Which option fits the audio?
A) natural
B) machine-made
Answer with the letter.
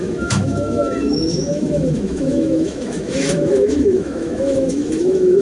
B